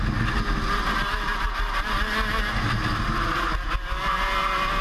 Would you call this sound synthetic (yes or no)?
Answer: no